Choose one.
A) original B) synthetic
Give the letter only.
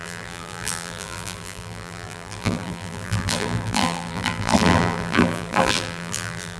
B